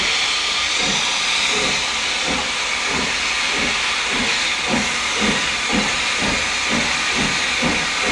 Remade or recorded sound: recorded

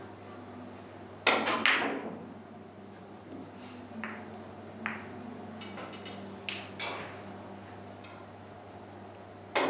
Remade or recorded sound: recorded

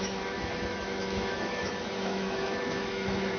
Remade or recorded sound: remade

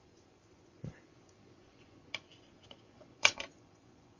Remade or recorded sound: remade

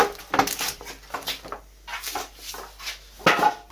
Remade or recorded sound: recorded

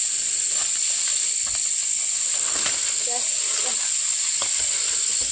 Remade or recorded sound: recorded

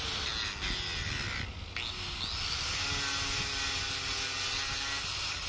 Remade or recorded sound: recorded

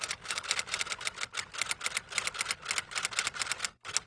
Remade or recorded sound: recorded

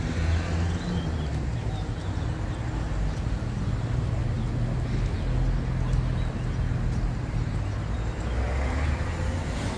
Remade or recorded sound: recorded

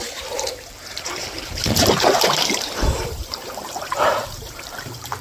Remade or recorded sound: remade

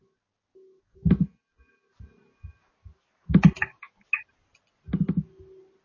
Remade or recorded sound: recorded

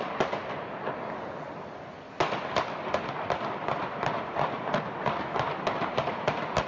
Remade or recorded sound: recorded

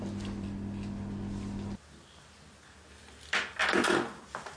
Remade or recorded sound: recorded